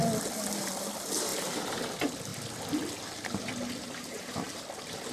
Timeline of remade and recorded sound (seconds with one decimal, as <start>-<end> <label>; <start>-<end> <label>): 0.0-1.3 recorded; 1.3-1.9 remade; 1.9-3.8 recorded; 3.8-4.5 remade; 4.5-5.1 recorded